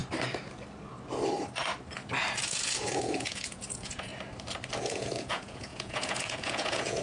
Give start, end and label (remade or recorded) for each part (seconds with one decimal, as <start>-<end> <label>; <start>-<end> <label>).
0.0-2.5 recorded; 2.5-4.1 remade; 4.1-4.8 recorded; 4.8-7.0 remade